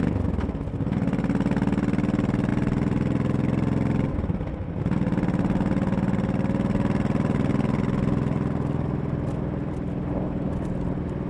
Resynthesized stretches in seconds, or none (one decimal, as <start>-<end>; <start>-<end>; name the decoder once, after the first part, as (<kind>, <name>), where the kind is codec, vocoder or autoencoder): none